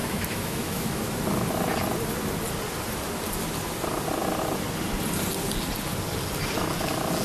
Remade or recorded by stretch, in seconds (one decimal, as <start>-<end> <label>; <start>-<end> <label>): 0.0-1.2 remade; 1.2-7.2 recorded